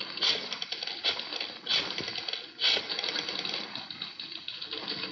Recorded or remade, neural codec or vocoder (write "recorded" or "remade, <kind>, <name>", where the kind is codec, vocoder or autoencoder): recorded